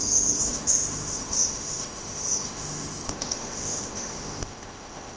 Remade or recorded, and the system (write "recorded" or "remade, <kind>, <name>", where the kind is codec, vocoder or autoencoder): remade, autoencoder, DAC-VAE